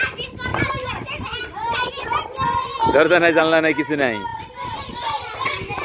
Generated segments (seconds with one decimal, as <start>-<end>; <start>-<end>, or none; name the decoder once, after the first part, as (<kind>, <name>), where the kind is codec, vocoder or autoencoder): 0.5-1.9 (vocoder, BigVGAN v2)